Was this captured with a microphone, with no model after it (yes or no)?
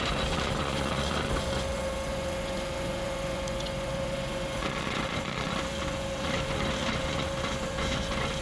no